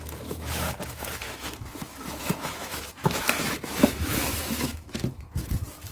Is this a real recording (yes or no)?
no